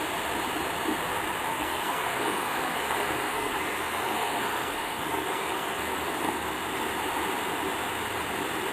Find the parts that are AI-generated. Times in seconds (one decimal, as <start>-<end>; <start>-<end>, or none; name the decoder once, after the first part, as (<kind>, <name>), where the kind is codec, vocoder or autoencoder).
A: 1.5-6.6 (codec, SNAC)